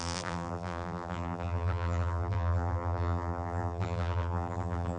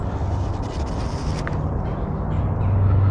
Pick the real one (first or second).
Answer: second